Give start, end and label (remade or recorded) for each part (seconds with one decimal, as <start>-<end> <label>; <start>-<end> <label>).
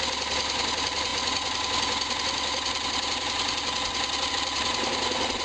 0.0-5.4 recorded